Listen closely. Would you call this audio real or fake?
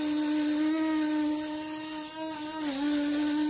real